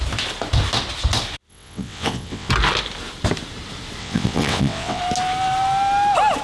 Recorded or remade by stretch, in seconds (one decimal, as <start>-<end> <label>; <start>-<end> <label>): 0.0-1.5 recorded; 1.5-2.5 remade; 2.5-4.0 recorded; 4.0-5.0 remade; 5.0-6.4 recorded